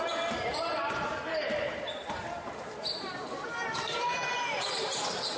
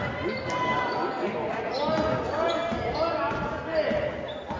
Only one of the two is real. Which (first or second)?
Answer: second